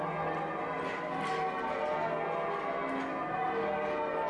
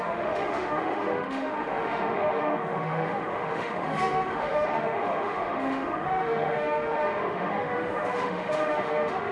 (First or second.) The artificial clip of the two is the second